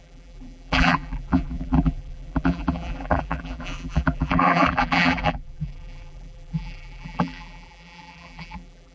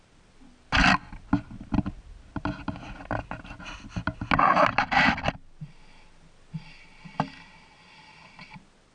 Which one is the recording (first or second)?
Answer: second